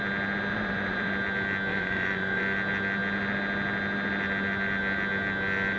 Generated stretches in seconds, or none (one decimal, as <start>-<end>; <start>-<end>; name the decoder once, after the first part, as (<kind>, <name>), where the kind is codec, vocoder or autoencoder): 0.5-1.1 (vocoder, Vocos); 1.7-2.4